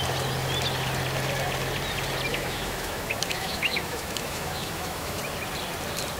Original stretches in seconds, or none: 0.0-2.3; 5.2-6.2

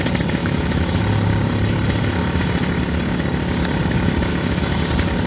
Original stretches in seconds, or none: 0.0-0.4; 1.0-4.3; 4.8-5.3